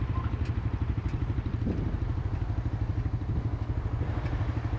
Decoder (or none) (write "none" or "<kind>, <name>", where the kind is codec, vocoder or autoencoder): none